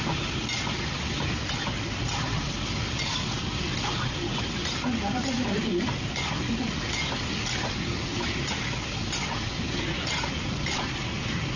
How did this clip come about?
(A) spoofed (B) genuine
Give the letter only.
B